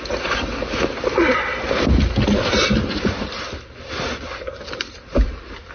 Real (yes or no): yes